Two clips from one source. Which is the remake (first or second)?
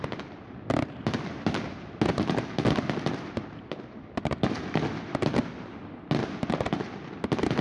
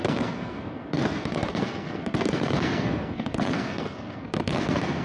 second